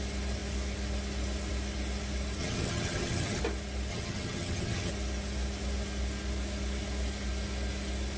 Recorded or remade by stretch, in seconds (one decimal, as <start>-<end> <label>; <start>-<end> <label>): 0.0-2.4 recorded; 2.4-3.4 remade; 3.4-3.9 recorded; 3.9-4.9 remade; 4.9-8.2 recorded